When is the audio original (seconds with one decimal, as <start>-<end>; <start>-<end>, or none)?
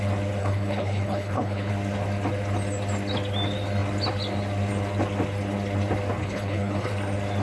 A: 0.0-0.4; 1.7-6.2; 6.9-7.4